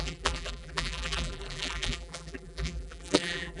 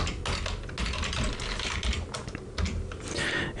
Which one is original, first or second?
second